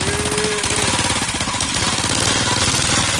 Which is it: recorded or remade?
recorded